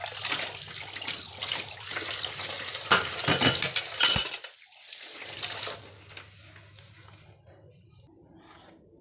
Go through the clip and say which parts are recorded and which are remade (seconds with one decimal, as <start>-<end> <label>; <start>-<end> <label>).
0.0-9.0 recorded